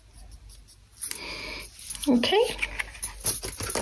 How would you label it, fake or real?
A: real